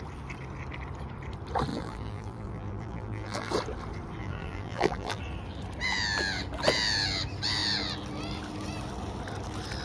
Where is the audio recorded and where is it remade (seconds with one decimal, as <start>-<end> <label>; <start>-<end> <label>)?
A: 0.0-1.7 recorded; 1.7-3.5 remade; 3.5-4.2 recorded; 4.2-5.2 remade; 5.2-9.8 recorded